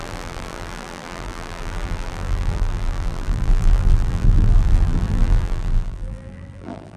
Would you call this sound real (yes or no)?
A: no